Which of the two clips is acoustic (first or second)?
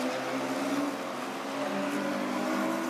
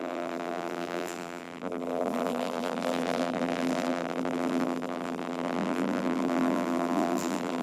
first